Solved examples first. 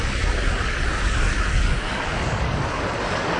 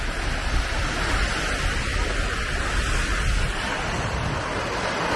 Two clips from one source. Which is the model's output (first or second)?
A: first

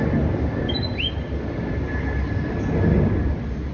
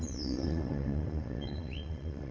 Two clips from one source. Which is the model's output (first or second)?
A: second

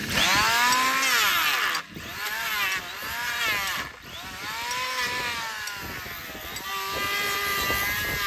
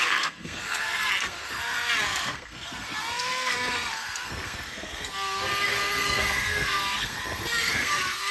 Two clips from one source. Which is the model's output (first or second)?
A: second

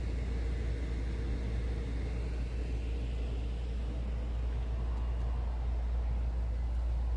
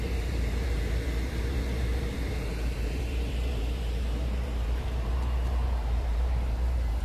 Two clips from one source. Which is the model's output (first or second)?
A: second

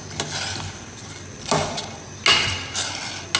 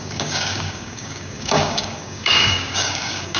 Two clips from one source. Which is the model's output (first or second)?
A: second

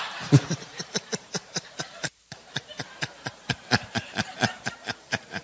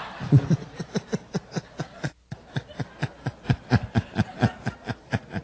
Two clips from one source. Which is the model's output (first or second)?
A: first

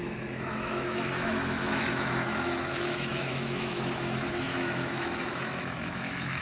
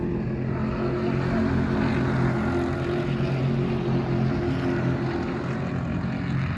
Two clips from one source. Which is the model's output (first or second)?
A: first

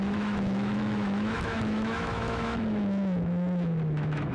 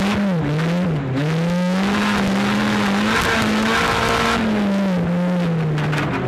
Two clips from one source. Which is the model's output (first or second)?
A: first